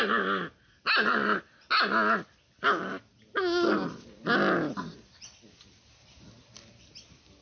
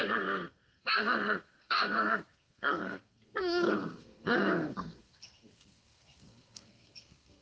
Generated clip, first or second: second